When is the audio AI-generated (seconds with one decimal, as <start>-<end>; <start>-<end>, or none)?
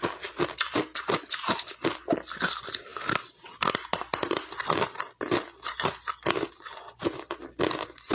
none